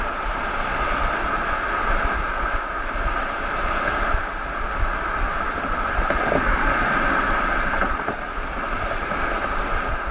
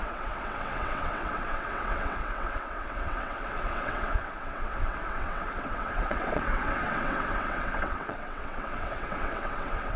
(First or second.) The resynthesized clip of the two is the second